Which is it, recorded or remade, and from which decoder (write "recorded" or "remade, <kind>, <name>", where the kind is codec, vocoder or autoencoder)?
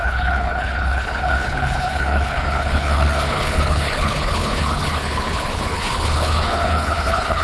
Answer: remade, codec, HILCodec